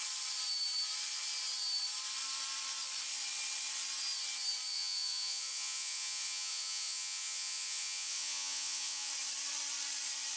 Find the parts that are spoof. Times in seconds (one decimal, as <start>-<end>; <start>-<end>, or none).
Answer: 4.7-9.1